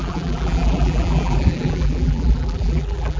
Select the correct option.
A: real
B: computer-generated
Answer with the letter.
B